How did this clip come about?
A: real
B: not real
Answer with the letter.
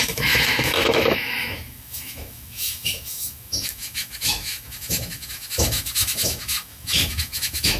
B